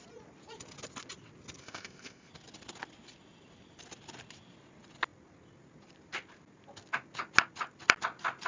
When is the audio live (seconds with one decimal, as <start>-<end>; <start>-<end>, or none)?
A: 0.0-1.6; 2.3-8.5

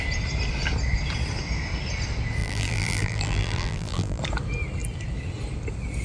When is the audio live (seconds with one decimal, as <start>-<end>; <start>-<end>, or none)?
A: 0.0-2.4; 4.2-6.0

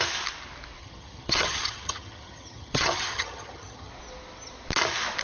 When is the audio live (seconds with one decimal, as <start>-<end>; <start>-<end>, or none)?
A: 0.0-0.8; 3.9-5.2

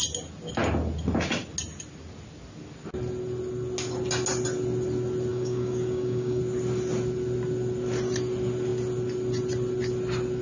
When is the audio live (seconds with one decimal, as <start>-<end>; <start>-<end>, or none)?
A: 0.0-5.3; 6.4-10.4

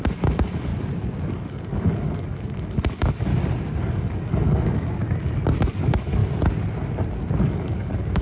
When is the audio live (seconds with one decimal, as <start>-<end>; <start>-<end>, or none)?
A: 0.7-1.2; 3.3-3.9; 5.0-5.7; 6.2-7.4

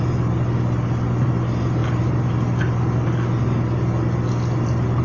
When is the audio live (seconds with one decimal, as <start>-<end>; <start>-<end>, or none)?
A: 0.0-5.0

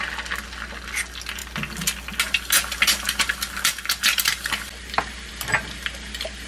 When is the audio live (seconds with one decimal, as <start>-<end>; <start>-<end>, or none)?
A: 0.0-6.5